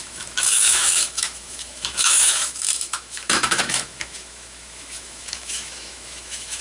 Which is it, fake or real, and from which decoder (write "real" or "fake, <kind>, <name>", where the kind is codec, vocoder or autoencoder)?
fake, autoencoder, DAC-VAE